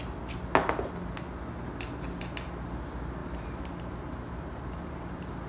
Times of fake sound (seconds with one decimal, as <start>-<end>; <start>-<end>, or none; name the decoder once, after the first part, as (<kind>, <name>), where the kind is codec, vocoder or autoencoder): 3.2-5.5 (vocoder, BigVGAN v2)